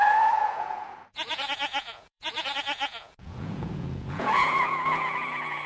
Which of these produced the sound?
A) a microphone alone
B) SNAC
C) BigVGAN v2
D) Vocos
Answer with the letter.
D